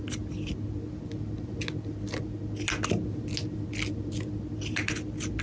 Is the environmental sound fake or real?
real